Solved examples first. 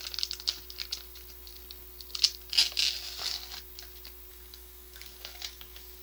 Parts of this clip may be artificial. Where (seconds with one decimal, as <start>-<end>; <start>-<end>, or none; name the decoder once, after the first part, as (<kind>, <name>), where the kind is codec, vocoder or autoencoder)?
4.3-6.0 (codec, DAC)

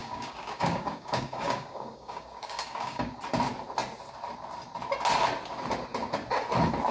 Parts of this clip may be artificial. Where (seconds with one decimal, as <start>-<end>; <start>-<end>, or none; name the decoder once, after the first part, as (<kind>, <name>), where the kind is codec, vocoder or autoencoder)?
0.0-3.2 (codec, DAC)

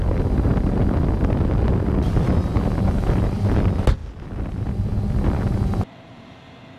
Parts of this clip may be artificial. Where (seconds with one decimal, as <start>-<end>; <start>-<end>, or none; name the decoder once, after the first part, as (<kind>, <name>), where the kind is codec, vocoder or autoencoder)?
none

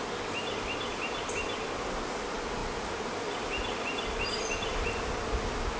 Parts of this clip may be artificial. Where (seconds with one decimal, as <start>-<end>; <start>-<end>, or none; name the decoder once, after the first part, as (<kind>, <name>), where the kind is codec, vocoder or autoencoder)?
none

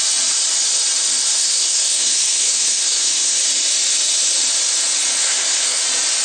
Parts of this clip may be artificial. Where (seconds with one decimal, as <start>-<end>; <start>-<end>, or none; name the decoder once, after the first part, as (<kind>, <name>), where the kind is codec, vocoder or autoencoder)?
1.3-3.4 (codec, SNAC); 5.2-5.8

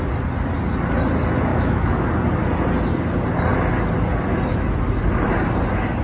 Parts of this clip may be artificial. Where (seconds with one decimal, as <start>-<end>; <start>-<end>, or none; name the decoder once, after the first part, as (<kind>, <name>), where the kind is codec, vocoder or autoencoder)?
1.5-2.1 (autoencoder, DAC-VAE)